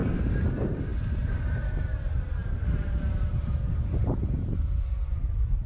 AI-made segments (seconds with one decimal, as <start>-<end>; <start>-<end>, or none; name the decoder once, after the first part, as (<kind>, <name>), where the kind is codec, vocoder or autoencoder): 0.5-5.7 (vocoder, BigVGAN v2)